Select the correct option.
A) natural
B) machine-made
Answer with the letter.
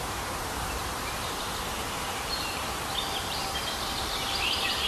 B